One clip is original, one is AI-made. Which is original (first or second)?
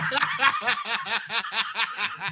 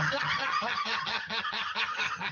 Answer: first